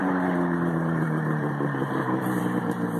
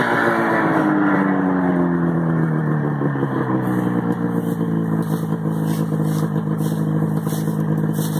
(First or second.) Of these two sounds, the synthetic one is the first